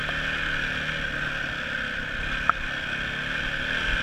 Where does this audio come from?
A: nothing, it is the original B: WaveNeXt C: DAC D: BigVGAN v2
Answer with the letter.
A